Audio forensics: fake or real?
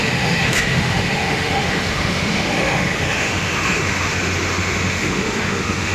fake